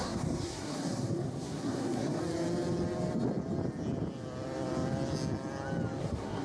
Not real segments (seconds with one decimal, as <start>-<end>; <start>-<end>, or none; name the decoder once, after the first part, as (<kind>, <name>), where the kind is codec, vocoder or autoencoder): 0.0-2.2 (codec, SNAC); 6.0-6.4